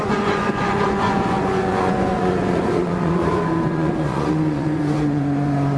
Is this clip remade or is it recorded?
remade